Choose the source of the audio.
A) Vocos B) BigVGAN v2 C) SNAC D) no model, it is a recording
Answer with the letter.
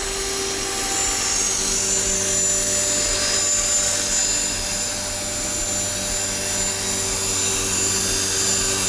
D